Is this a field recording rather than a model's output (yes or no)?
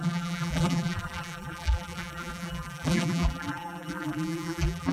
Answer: no